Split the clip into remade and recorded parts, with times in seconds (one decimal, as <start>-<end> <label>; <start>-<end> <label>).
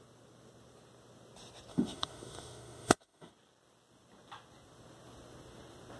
0.0-1.7 recorded; 1.7-3.3 remade; 3.3-6.0 recorded